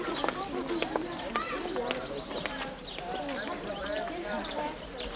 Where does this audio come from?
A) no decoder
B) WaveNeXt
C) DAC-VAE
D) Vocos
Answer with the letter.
A